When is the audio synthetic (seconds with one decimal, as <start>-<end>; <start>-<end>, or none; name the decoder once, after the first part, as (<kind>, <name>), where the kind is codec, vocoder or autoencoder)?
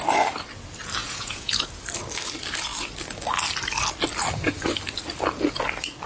1.0-1.7 (vocoder, Vocos)